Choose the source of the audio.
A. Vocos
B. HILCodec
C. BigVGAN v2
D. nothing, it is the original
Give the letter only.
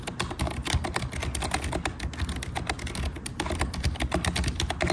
D